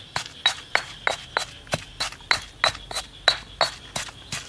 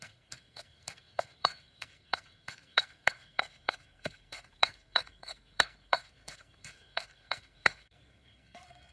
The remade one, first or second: second